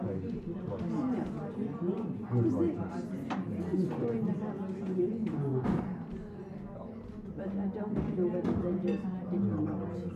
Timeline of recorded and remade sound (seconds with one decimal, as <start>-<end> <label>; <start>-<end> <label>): 0.0-10.2 recorded